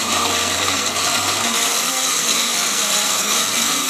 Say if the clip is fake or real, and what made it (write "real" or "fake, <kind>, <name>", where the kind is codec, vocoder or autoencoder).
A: fake, codec, SNAC